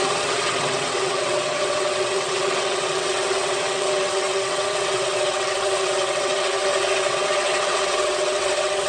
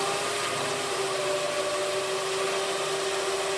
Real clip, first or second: second